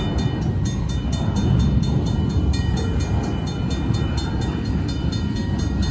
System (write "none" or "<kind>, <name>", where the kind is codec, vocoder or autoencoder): none